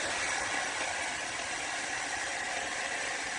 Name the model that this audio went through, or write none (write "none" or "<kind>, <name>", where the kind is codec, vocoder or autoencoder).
none